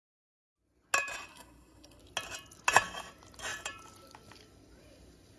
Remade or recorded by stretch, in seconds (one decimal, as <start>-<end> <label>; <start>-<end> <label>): 0.0-1.3 recorded; 1.3-2.0 remade; 2.0-5.4 recorded